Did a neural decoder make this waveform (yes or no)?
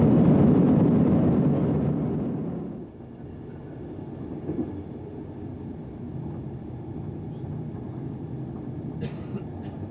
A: no